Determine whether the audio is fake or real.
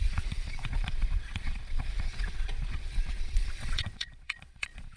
fake